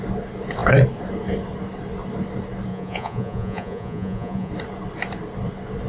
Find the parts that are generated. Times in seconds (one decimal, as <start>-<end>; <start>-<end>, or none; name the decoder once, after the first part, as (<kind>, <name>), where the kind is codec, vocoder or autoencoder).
2.7-4.5 (vocoder, Vocos)